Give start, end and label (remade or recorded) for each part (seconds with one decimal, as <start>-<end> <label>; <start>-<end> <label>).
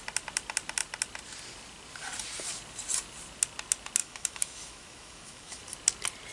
0.0-4.0 recorded; 4.0-5.6 remade; 5.6-6.3 recorded